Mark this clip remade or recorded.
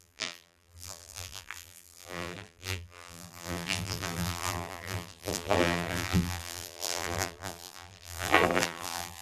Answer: remade